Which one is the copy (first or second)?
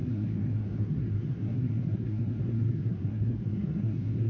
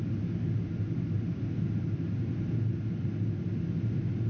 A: first